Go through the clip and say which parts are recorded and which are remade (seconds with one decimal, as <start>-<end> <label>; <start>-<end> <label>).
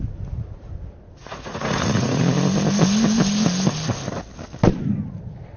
0.0-1.2 recorded; 1.2-2.2 remade; 2.2-5.6 recorded